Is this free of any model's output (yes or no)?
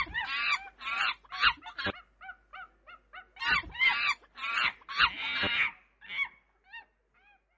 yes